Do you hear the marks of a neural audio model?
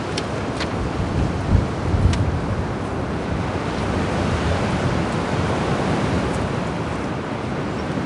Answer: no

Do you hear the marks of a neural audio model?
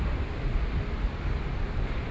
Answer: no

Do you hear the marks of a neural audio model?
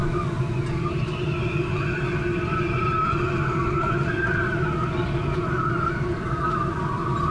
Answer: no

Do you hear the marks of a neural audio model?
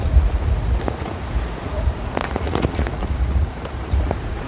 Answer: yes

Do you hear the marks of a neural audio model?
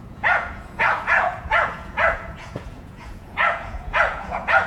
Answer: yes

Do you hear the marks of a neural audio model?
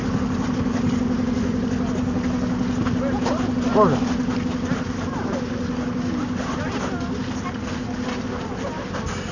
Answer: no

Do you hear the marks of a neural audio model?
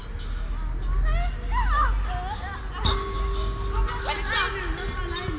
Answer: no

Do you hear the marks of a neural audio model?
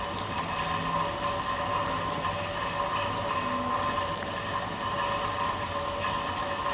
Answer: no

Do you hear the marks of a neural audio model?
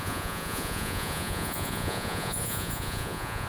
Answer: yes